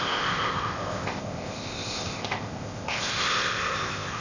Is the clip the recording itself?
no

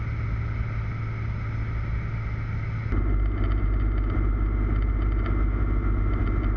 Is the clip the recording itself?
yes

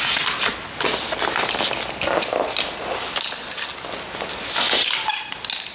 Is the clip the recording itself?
yes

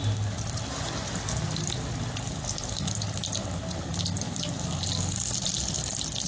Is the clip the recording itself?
yes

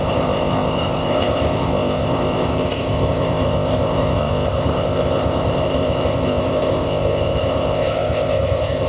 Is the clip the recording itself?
no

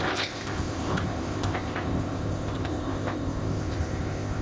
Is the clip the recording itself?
no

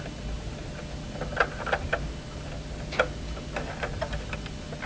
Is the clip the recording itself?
yes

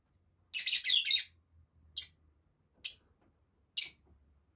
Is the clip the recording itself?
yes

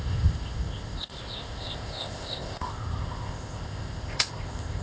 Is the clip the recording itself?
no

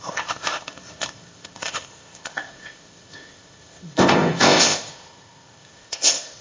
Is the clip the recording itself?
no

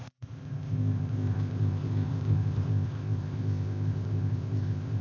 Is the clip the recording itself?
no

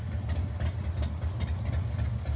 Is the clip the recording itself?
yes